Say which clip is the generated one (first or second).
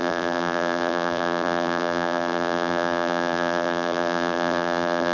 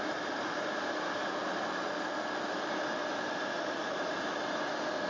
first